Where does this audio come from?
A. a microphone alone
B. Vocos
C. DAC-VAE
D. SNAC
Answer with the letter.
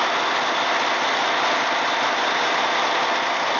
A